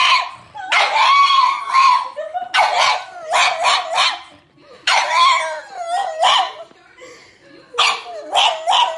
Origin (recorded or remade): recorded